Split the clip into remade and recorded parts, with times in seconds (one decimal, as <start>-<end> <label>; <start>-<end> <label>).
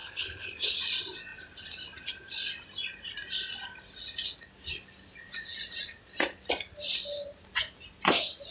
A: 0.0-0.8 remade; 0.8-8.5 recorded